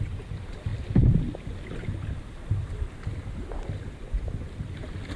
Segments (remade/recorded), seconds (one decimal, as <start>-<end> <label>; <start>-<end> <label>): 0.0-5.2 recorded